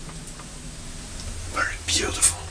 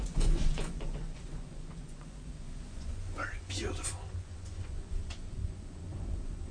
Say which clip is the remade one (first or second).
second